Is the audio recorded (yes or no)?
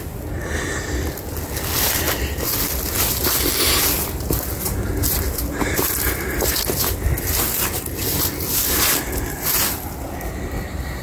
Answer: yes